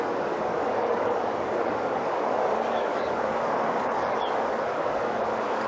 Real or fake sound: fake